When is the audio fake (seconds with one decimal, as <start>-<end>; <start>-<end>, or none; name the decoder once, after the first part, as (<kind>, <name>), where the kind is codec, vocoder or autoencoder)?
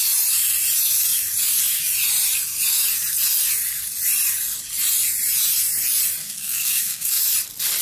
6.2-7.2 (codec, SNAC)